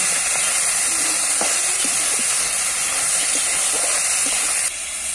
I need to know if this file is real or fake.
real